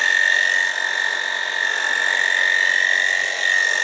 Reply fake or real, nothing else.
real